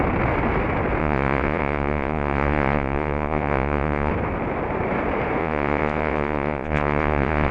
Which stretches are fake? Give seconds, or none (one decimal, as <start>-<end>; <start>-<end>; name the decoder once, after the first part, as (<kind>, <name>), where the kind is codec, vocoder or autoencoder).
1.0-4.1 (vocoder, Vocos); 5.4-7.5